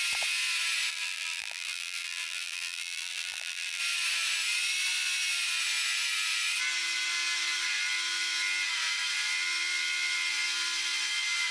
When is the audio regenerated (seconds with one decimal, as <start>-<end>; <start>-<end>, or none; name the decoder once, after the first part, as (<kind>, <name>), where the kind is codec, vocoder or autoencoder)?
0.9-3.8 (vocoder, BigVGAN v2)